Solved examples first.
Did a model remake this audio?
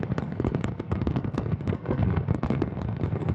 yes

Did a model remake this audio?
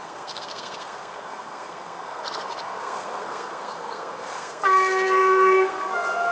yes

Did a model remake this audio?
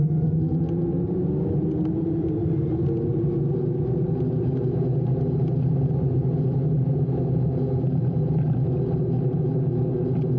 no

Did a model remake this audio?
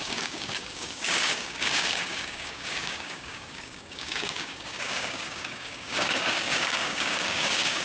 yes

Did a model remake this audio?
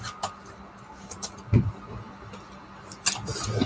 no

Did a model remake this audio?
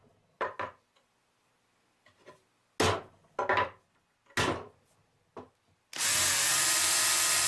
no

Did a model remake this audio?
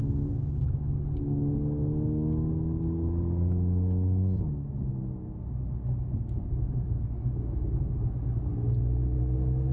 no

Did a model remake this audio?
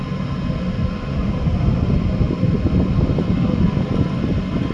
no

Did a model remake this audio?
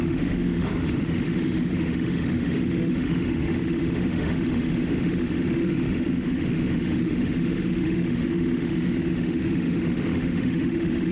yes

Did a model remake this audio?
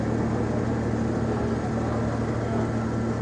no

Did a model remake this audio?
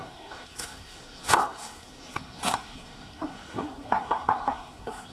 yes